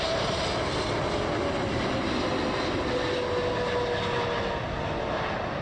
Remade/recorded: recorded